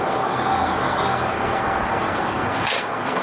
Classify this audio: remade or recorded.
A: remade